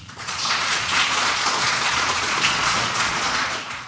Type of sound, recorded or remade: remade